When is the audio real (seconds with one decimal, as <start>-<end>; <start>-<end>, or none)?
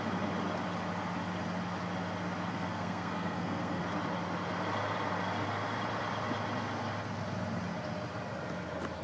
0.0-2.5; 3.8-9.0